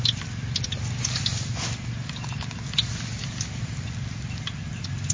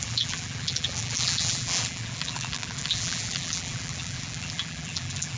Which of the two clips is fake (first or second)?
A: second